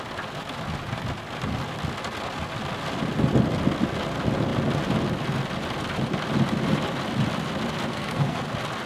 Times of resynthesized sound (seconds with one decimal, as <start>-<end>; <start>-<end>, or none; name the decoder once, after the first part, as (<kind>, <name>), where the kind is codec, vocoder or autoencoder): 7.9-8.4 (codec, SNAC)

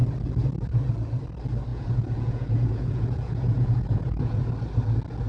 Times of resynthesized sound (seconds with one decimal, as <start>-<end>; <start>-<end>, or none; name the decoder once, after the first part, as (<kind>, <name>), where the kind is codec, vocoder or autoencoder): 1.7-4.4 (vocoder, Vocos)

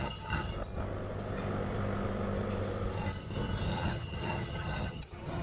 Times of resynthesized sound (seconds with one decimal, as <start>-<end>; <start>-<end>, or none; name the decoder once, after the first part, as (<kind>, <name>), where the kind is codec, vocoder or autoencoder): 0.0-0.5 (vocoder, HiFi-GAN); 3.7-5.4